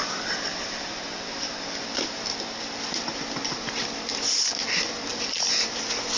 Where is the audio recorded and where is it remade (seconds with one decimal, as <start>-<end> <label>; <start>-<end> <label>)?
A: 0.0-5.1 recorded; 5.1-5.7 remade; 5.7-6.2 recorded